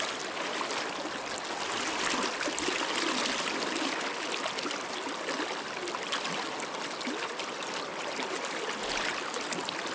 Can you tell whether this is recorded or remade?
recorded